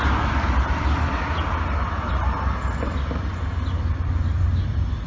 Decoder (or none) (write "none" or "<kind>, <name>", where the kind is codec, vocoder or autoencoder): none